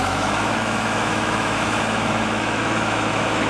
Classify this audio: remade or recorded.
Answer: remade